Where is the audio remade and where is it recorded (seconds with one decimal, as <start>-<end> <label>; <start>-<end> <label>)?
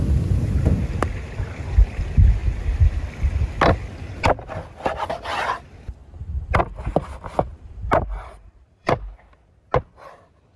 0.0-7.5 recorded; 7.5-8.9 remade; 8.9-10.6 recorded